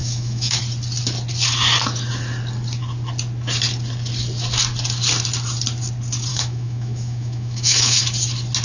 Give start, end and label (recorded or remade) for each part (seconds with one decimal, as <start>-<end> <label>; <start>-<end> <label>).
0.0-0.6 remade; 0.6-6.3 recorded; 6.3-8.0 remade; 8.0-8.6 recorded